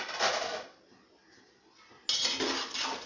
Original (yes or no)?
yes